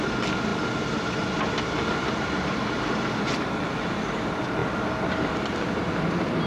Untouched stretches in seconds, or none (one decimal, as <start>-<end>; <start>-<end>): 0.0-6.5